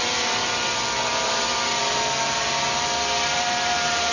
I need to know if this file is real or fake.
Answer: real